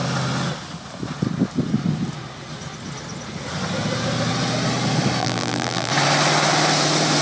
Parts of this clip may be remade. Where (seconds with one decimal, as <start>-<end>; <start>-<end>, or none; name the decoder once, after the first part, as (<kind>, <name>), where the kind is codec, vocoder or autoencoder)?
5.2-5.9 (vocoder, BigVGAN v2)